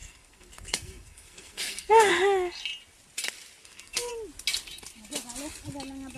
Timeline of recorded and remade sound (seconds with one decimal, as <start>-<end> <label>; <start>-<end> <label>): 0.0-2.1 remade; 2.1-3.6 recorded; 3.6-4.1 remade; 4.1-6.2 recorded

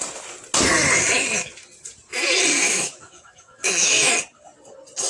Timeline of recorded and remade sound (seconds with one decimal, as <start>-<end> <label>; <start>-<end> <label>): 0.0-2.5 recorded; 2.5-4.1 remade; 4.1-5.1 recorded

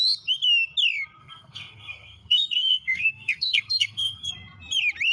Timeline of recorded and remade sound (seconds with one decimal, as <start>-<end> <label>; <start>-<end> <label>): 0.0-1.2 recorded; 1.2-4.3 remade; 4.3-5.1 recorded

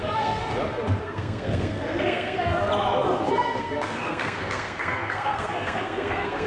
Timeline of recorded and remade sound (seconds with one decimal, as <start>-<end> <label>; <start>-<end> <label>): 0.0-0.4 remade; 0.4-1.0 recorded; 1.0-2.7 remade; 2.7-3.3 recorded; 3.3-6.5 remade

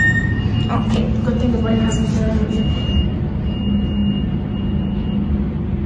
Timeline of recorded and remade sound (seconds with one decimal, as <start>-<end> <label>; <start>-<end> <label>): 0.0-5.9 recorded